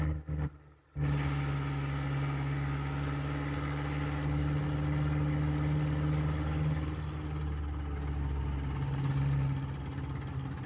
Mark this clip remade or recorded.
recorded